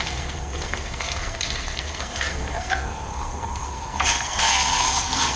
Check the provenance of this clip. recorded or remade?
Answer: remade